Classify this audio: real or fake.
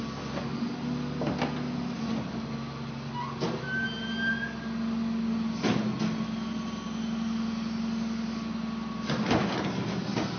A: real